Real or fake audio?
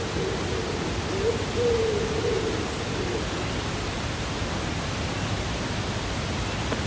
real